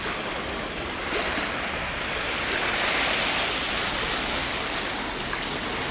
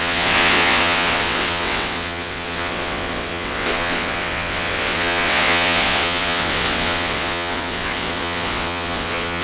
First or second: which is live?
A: first